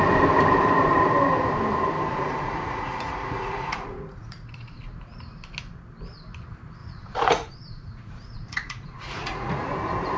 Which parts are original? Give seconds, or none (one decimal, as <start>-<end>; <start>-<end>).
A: 0.0-2.1; 4.8-6.8; 9.7-10.2